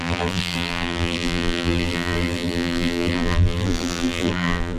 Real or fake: fake